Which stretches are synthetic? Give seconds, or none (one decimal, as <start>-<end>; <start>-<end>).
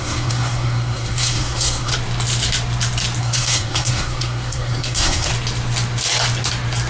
0.0-1.9; 3.2-5.3